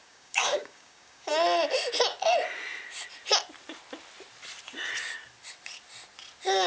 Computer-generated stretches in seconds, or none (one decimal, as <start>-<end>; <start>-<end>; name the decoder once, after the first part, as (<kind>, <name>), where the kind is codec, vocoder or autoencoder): 0.0-1.3 (codec, DAC)